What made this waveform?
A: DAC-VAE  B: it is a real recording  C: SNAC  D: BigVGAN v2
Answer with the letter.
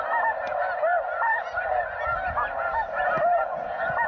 B